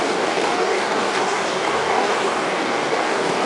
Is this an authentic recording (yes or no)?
no